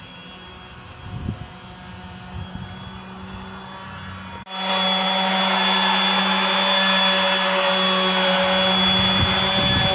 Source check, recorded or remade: recorded